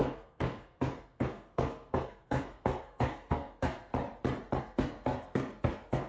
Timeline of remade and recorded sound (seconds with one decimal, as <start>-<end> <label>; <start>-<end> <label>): 0.0-3.9 remade; 3.9-4.6 recorded; 4.6-6.1 remade